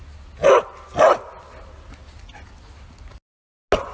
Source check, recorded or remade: recorded